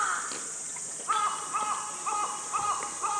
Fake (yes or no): no